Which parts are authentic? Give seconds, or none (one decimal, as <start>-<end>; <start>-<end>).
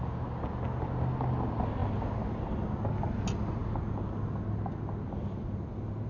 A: 0.0-6.1